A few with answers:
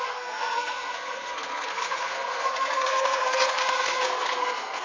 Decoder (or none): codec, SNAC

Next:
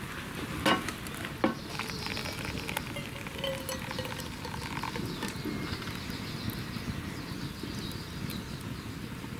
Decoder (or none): none